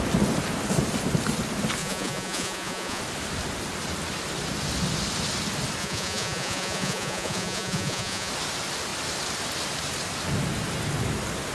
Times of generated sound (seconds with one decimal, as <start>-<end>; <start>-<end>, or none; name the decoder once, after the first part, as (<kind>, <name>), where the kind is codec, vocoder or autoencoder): 1.8-3.0 (vocoder, Vocos); 5.8-8.3

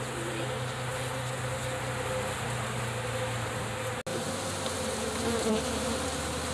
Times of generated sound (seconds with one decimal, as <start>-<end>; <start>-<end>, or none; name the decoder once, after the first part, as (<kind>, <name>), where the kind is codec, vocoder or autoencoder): none

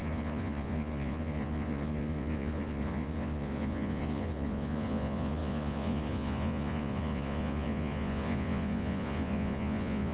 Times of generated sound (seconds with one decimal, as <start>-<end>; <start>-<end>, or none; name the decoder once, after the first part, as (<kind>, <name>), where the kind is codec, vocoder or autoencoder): 0.0-10.1 (vocoder, Vocos)